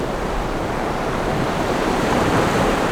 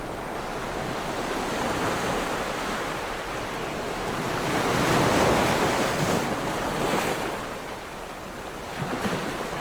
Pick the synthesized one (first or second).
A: first